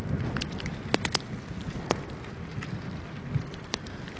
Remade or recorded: recorded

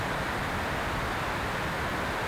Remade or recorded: recorded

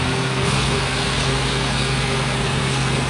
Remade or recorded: remade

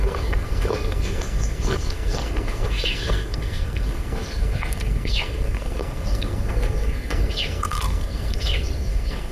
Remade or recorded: remade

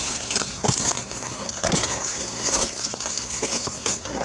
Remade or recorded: remade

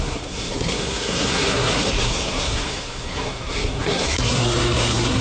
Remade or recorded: remade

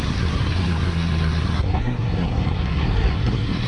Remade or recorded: remade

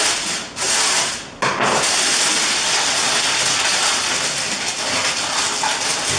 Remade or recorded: recorded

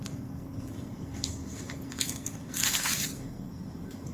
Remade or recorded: remade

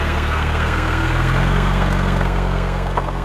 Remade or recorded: remade